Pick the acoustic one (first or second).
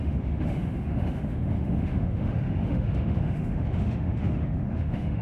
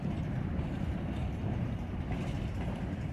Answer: second